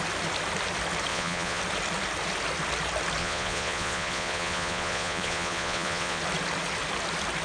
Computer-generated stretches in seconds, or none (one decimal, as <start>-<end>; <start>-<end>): 1.1-1.6; 3.2-6.2